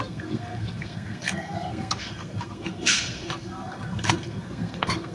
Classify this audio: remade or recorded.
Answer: remade